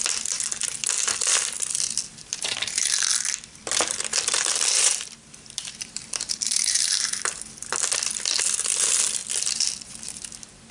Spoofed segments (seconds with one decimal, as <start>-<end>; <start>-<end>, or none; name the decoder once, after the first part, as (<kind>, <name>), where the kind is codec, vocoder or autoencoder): 2.2-2.8 (vocoder, BigVGAN v2); 4.5-7.4